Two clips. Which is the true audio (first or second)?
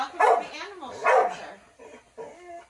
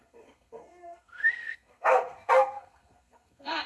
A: first